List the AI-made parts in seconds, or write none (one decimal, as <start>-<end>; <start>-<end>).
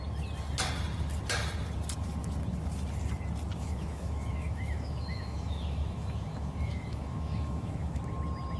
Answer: 3.5-8.0